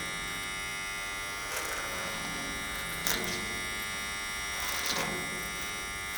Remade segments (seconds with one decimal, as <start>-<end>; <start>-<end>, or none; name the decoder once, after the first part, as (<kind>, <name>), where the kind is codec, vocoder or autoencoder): none

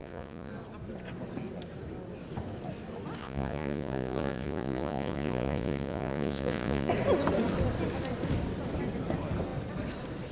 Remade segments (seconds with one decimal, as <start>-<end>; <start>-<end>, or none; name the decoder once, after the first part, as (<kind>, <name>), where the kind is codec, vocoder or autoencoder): 0.0-0.5 (vocoder, Vocos); 3.2-6.9